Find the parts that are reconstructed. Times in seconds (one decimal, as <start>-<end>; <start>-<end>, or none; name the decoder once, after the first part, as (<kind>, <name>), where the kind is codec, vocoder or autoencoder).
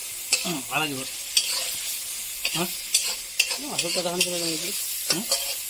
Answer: none